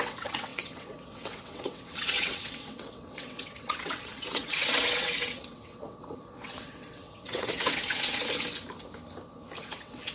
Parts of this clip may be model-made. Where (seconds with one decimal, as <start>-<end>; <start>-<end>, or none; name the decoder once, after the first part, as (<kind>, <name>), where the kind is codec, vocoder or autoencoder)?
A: 0.0-8.2 (vocoder, WaveNeXt); 9.6-10.1